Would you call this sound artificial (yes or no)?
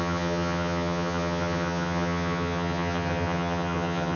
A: yes